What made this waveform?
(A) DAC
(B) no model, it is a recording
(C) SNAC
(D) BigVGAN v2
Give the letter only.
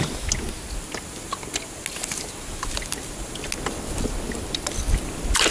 B